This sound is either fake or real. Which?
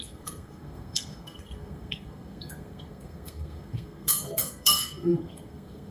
fake